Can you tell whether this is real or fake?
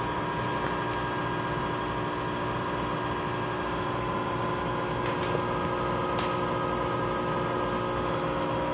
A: real